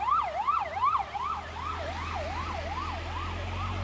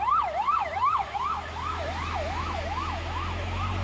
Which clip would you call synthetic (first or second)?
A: second